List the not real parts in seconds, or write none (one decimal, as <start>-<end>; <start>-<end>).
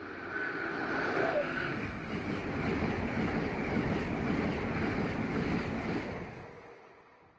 1.2-2.0